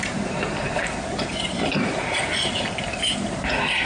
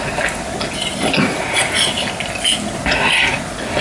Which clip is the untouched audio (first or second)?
second